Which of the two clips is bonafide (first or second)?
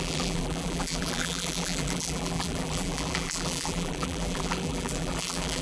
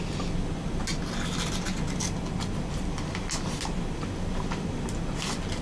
second